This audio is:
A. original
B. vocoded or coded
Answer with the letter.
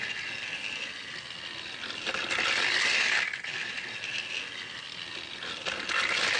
A